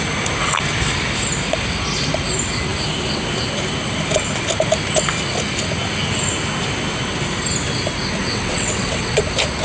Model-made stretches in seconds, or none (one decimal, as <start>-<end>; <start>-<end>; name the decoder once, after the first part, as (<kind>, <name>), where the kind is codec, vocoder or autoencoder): 8.2-9.2 (vocoder, WaveNeXt)